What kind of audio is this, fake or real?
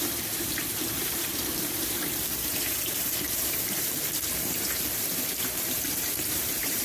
fake